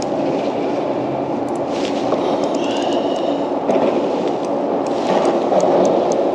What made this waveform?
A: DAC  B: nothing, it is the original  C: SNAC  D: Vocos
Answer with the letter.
B